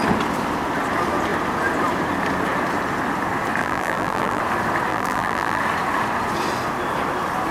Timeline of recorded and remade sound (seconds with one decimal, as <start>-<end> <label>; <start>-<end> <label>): 0.0-3.6 recorded; 3.6-4.4 remade; 4.4-4.9 recorded; 4.9-5.6 remade; 5.6-7.5 recorded